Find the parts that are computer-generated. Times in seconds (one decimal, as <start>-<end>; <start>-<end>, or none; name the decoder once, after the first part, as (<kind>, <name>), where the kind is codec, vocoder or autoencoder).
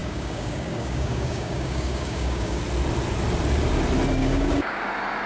0.0-2.6 (codec, DAC); 4.2-4.8